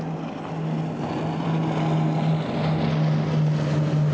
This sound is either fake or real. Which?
real